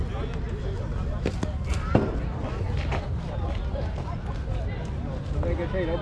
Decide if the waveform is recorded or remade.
recorded